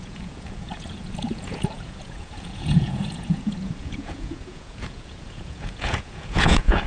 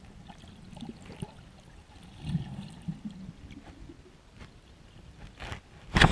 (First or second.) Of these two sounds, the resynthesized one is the first